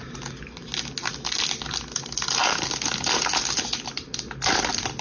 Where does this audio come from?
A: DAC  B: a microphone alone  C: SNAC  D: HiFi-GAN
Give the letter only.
B